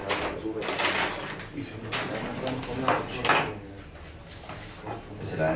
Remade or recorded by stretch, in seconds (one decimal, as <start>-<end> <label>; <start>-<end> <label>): 0.0-5.6 recorded